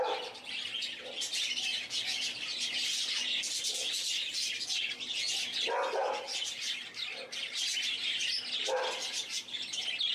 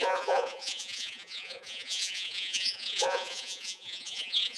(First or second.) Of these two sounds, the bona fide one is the first